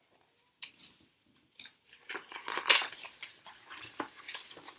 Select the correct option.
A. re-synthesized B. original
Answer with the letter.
B